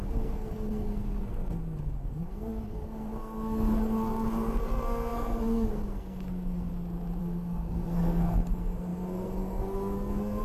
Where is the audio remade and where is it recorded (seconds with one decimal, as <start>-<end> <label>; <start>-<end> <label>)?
0.0-6.7 remade; 6.7-7.2 recorded; 7.2-10.4 remade